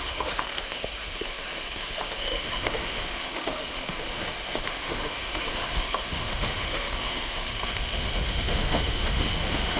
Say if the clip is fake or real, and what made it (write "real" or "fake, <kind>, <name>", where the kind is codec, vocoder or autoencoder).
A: fake, autoencoder, DAC-VAE